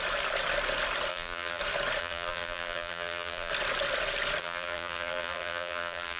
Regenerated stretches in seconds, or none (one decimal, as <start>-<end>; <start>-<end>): 1.1-1.6; 2.0-3.5; 4.4-6.2